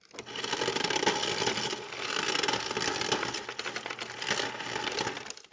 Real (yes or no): yes